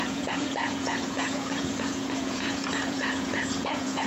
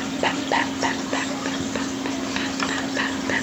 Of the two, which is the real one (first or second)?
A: second